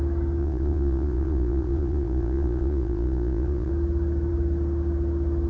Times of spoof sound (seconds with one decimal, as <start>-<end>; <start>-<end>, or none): 0.4-3.7